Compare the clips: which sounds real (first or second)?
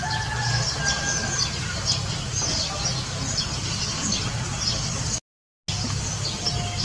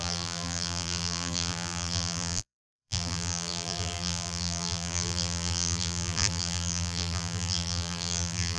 first